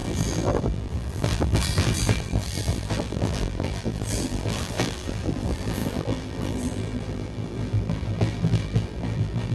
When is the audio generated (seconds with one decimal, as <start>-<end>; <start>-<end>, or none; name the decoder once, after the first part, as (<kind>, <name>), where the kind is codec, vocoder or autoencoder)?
0.0-9.5 (vocoder, BigVGAN v2)